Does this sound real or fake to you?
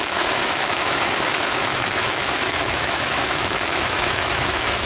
fake